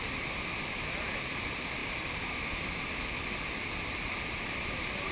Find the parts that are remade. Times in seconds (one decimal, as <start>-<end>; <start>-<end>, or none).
1.8-5.1